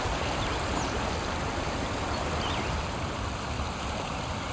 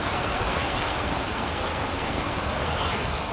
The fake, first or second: second